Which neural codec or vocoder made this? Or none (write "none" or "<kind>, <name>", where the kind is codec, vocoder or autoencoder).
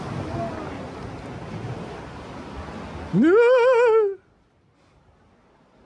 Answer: none